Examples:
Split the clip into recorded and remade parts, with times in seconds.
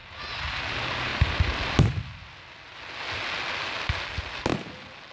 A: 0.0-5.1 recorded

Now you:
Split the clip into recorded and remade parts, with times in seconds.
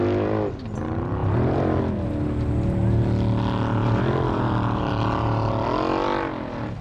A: 0.0-1.2 recorded; 1.2-1.8 remade; 1.8-3.8 recorded; 3.8-5.5 remade; 5.5-6.8 recorded